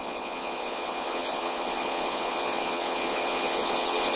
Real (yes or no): no